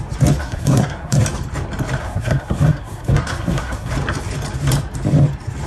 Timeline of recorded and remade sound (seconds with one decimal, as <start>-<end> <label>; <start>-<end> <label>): 0.0-0.4 recorded; 0.4-1.2 remade; 1.2-2.0 recorded; 2.0-3.9 remade; 3.9-5.7 recorded